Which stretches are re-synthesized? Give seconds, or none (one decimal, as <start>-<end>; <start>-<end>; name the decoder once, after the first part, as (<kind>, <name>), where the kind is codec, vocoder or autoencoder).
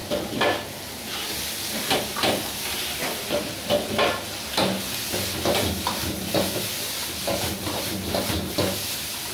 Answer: 7.0-8.0 (vocoder, BigVGAN v2)